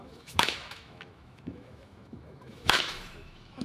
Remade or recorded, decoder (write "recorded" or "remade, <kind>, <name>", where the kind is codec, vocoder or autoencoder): remade, autoencoder, DAC-VAE